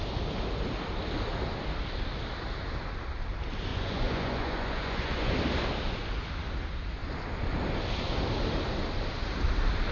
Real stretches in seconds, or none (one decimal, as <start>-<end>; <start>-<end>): 0.0-3.7; 5.3-9.9